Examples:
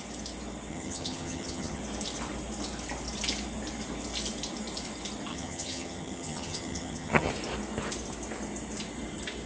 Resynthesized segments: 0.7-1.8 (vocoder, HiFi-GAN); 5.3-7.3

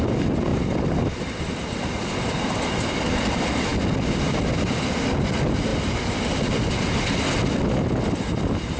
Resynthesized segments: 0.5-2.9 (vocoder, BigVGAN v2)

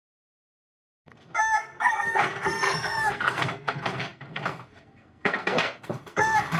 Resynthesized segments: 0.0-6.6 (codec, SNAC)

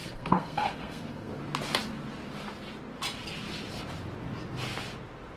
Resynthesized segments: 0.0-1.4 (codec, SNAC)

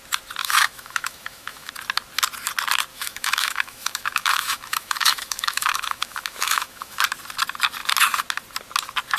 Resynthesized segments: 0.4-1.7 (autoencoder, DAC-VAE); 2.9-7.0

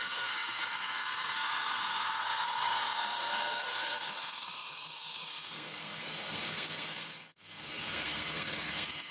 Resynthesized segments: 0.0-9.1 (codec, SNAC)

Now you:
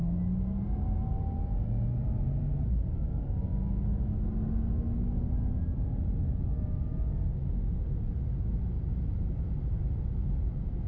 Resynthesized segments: none